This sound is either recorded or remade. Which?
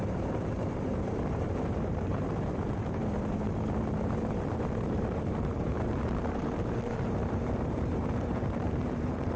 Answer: remade